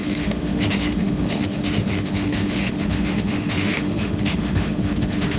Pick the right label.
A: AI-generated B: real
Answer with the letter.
A